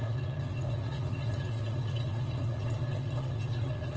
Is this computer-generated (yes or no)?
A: yes